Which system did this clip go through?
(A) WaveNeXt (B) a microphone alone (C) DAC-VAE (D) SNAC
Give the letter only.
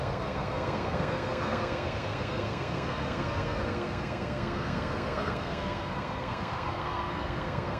D